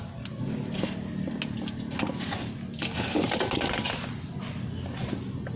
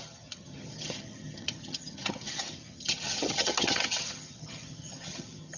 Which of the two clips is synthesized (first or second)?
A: second